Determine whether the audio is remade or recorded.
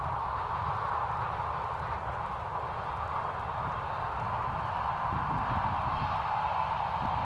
recorded